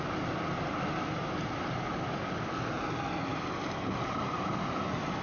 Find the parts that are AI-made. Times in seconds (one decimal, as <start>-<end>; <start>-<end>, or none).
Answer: 1.2-1.9